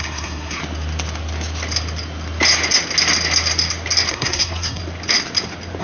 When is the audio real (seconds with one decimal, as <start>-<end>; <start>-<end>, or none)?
0.6-4.1; 4.8-5.8